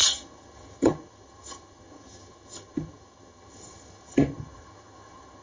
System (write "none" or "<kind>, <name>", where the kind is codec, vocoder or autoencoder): vocoder, HiFi-GAN